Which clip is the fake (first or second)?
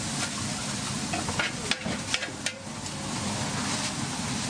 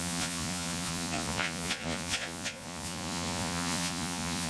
second